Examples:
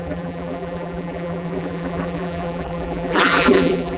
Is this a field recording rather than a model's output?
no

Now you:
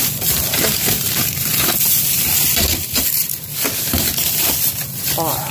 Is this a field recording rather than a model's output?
no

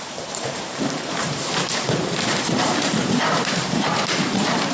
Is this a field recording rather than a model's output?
no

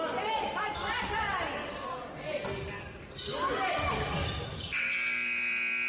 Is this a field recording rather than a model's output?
yes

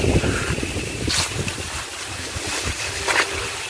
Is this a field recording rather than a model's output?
no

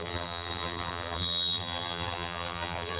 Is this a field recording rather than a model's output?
no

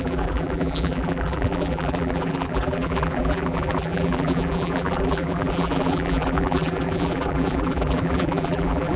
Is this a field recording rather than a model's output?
no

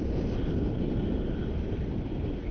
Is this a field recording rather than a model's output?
no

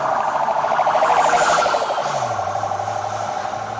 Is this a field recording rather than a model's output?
yes